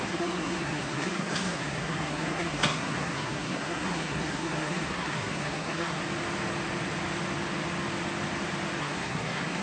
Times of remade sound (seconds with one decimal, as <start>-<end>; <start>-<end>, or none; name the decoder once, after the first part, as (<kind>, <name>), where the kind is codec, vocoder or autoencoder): 0.0-6.0 (codec, SNAC); 8.8-9.6